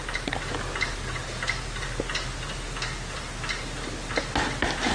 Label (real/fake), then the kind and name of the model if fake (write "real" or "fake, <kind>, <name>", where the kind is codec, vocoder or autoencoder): real